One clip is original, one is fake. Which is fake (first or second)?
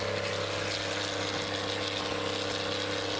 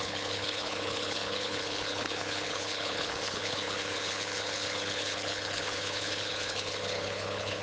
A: second